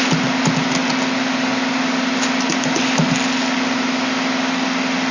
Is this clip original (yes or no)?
yes